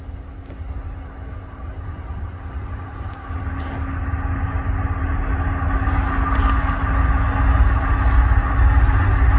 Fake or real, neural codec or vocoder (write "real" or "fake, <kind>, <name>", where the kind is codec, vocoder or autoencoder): real